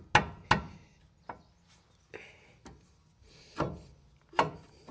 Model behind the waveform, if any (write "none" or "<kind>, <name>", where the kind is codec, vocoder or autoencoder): none